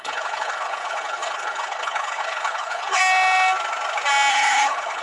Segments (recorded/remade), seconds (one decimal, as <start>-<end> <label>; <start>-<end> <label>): 0.0-3.0 remade; 3.0-4.3 recorded; 4.3-5.0 remade